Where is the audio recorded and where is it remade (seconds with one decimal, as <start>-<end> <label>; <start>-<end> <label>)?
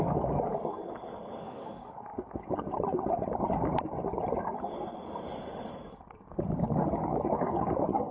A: 0.0-0.5 remade; 0.5-1.4 recorded; 1.4-2.1 remade; 2.1-6.9 recorded; 6.9-8.1 remade